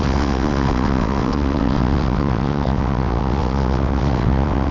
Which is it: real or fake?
fake